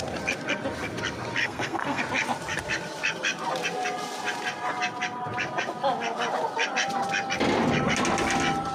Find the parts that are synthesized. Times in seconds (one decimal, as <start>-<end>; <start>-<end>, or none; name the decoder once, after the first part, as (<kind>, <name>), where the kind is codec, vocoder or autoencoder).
1.4-2.0 (codec, SNAC)